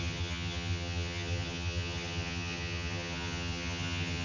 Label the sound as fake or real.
fake